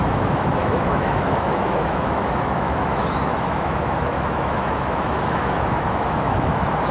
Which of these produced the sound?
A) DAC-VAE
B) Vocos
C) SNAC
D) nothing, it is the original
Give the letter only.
A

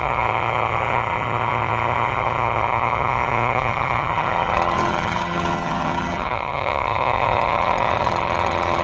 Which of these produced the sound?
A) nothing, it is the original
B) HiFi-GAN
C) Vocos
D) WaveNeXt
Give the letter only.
B